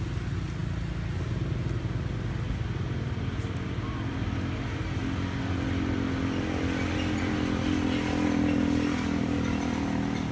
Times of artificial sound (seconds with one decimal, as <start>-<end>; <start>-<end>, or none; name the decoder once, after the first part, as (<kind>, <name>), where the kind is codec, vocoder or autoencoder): none